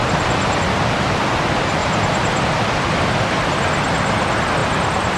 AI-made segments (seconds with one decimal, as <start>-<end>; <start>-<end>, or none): 1.8-3.5